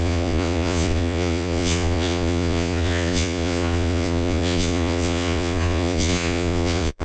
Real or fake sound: fake